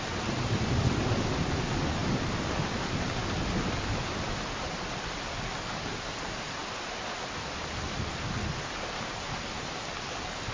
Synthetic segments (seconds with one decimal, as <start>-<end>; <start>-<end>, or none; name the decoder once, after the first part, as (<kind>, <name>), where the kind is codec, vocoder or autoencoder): none